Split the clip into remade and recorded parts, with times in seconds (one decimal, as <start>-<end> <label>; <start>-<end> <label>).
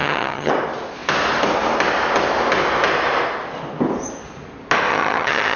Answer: 0.0-0.5 remade; 0.5-4.9 recorded; 4.9-5.6 remade